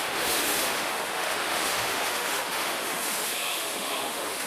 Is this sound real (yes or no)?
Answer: no